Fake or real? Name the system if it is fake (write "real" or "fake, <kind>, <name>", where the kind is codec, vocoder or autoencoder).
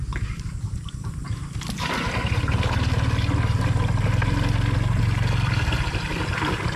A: real